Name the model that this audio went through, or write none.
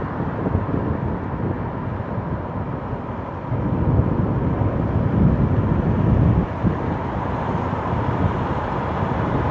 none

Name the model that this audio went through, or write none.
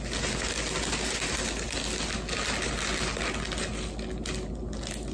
none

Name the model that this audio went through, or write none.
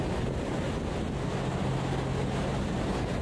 none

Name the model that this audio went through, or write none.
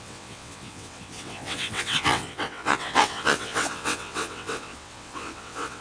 vocoder, WaveNeXt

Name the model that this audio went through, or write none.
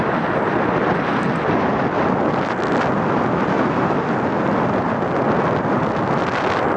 none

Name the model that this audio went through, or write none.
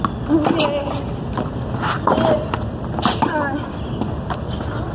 none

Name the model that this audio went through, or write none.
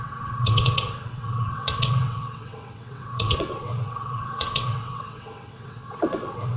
vocoder, WaveNeXt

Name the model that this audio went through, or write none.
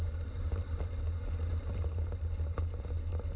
none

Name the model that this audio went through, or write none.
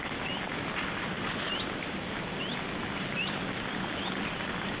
none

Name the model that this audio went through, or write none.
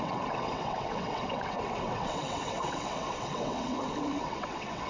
vocoder, WaveNeXt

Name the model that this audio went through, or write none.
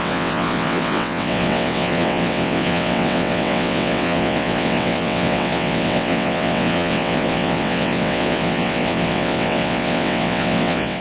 vocoder, WaveNeXt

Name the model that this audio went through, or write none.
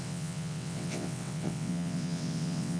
vocoder, WaveNeXt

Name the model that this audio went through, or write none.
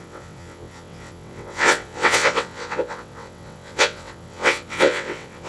vocoder, WaveNeXt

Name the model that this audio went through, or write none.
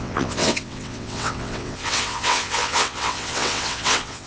vocoder, WaveNeXt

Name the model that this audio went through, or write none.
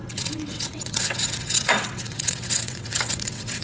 vocoder, WaveNeXt